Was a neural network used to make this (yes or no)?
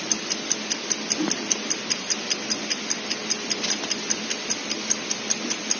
no